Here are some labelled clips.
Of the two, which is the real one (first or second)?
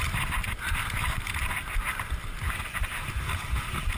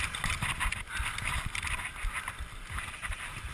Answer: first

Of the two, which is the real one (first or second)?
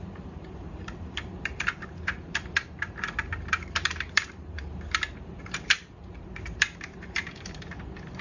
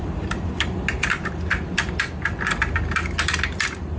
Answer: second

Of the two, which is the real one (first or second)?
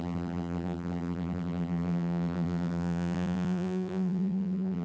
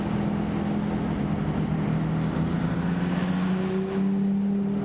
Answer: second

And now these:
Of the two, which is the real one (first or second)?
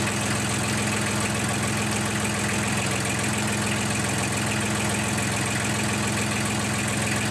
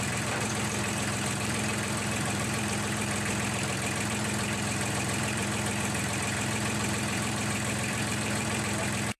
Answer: first